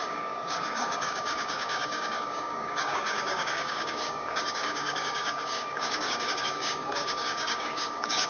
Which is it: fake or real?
fake